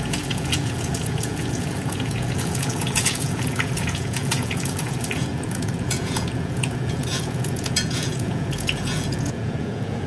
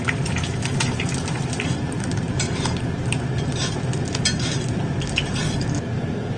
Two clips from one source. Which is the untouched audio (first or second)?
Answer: second